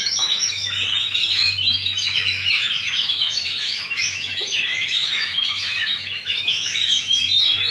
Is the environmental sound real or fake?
fake